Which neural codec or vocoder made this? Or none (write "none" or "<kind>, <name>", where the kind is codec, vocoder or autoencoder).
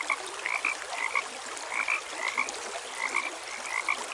none